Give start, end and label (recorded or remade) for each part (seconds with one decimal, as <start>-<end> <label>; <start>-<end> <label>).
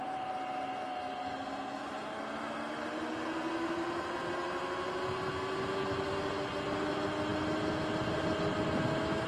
0.0-9.3 recorded